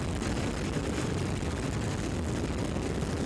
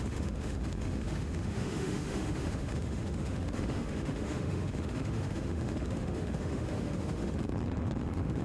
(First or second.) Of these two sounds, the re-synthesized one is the second